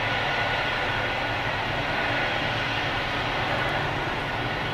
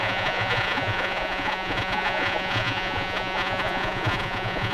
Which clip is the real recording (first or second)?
first